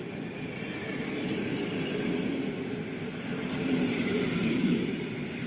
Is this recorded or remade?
recorded